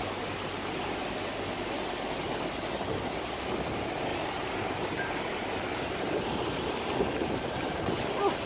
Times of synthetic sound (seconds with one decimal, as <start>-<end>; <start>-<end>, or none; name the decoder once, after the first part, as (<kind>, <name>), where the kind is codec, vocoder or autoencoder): 4.1-7.8 (vocoder, BigVGAN v2)